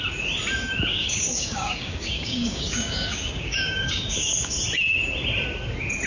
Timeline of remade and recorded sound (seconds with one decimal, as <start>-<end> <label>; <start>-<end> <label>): 0.0-0.9 recorded; 0.9-4.6 remade; 4.6-6.1 recorded